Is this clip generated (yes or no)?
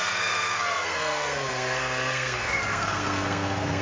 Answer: yes